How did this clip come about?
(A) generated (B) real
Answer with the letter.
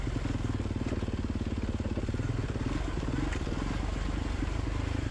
B